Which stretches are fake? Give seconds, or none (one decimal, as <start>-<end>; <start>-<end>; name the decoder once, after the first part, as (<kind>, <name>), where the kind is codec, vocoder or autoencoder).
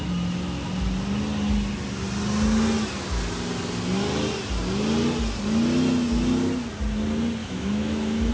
7.4-8.3 (autoencoder, DAC-VAE)